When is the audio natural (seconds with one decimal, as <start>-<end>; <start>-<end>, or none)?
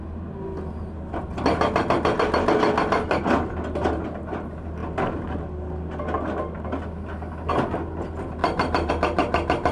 0.0-8.4; 8.9-9.7